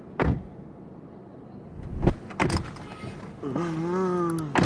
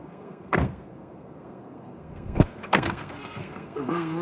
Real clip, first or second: first